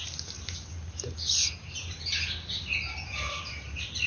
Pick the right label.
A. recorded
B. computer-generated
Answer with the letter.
A